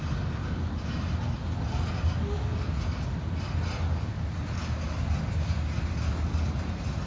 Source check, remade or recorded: recorded